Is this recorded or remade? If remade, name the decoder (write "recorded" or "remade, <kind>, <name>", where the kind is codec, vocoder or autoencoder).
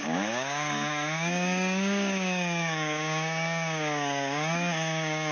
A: remade, codec, DAC